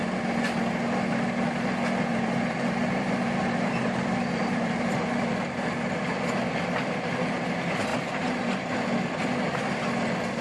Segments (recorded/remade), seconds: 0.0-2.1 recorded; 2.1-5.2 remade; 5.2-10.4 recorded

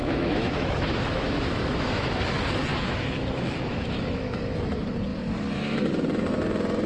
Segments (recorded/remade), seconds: 0.0-2.2 remade; 2.2-2.7 recorded; 2.7-4.4 remade; 4.4-6.9 recorded

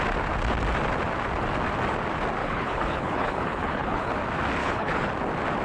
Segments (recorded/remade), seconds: 0.0-2.4 recorded; 2.4-4.1 remade; 4.1-4.6 recorded; 4.6-5.1 remade; 5.1-5.6 recorded

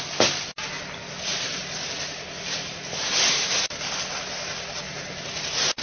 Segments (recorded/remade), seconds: 0.0-1.3 recorded; 1.3-3.7 remade; 3.7-5.8 recorded

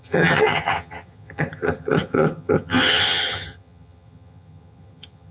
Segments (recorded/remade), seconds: 0.0-5.3 remade

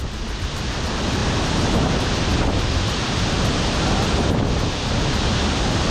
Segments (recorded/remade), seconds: 0.0-5.9 recorded